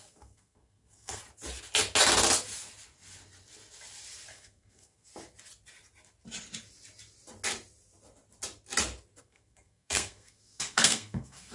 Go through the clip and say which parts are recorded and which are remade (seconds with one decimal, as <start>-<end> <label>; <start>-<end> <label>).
0.0-1.2 remade; 1.2-4.3 recorded; 4.3-5.1 remade; 5.1-9.2 recorded; 9.2-11.5 remade